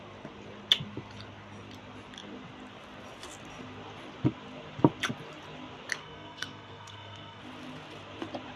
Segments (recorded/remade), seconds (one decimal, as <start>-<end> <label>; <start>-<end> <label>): 0.0-6.0 recorded; 6.0-7.4 remade; 7.4-8.6 recorded